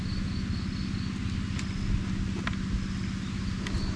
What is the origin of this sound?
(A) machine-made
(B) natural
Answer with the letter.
B